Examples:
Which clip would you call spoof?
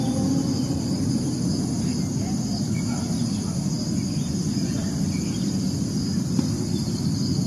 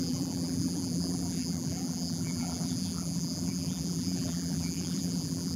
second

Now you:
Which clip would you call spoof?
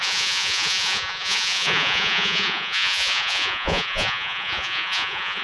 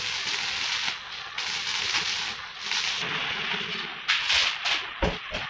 first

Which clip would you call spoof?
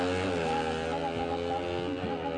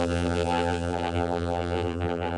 second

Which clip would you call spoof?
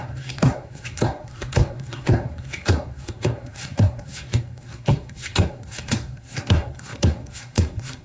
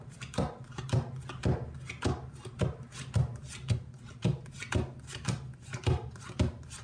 first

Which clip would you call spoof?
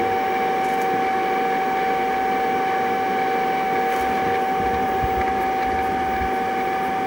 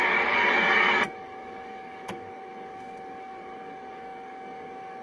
second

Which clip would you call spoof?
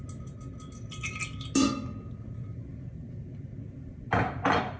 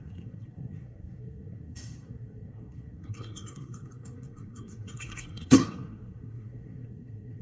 second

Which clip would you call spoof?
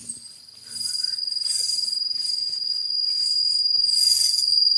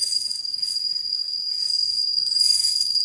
second